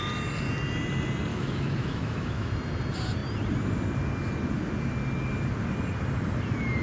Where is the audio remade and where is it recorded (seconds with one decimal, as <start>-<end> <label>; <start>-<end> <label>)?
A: 0.0-1.3 recorded; 1.3-2.5 remade; 2.5-6.8 recorded